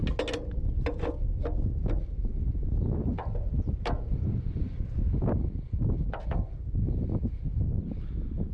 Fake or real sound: real